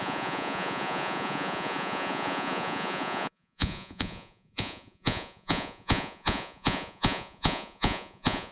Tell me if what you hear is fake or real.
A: fake